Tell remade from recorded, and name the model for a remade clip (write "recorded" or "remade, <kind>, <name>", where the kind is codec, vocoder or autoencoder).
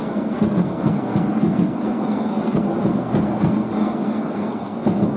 remade, codec, SNAC